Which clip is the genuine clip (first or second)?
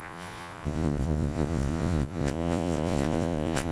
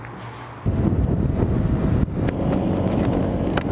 second